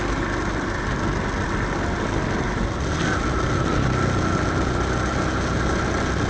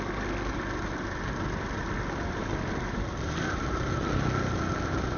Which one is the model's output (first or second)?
second